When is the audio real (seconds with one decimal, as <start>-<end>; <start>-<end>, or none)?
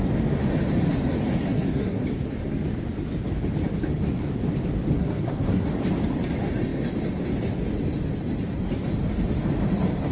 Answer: 0.0-1.4; 2.0-4.9; 5.7-10.1